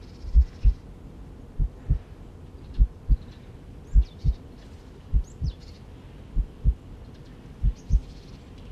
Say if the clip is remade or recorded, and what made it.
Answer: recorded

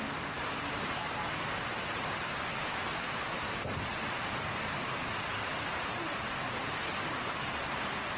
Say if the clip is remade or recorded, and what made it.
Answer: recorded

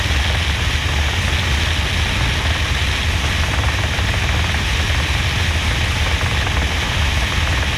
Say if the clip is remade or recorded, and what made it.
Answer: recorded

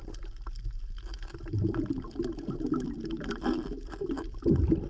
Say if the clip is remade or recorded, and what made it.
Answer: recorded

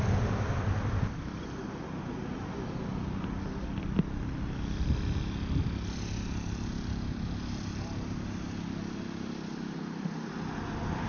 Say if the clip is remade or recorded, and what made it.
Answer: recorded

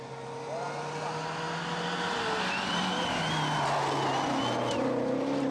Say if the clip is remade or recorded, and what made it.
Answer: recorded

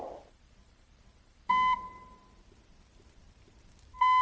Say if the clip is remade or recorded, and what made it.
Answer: recorded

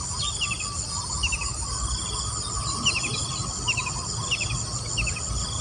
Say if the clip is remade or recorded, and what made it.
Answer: recorded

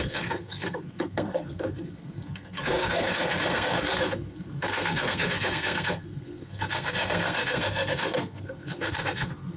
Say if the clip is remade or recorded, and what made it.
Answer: remade, codec, SNAC